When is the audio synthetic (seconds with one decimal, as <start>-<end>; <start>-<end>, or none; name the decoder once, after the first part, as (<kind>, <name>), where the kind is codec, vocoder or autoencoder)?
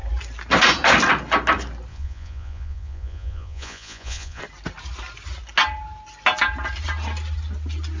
1.9-4.4 (vocoder, Vocos)